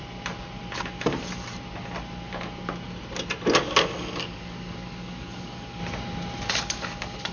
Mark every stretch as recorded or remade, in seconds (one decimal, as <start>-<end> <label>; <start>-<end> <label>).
0.0-4.2 recorded; 4.2-5.8 remade; 5.8-6.5 recorded; 6.5-7.3 remade